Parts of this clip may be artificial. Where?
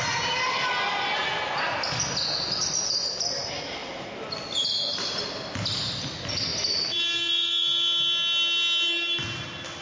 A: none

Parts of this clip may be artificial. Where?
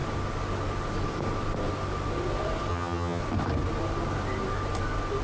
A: 2.7-3.2 (vocoder, HiFi-GAN)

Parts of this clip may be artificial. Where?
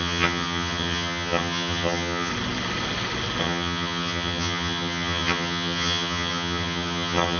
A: 0.0-2.3 (vocoder, HiFi-GAN); 3.4-7.4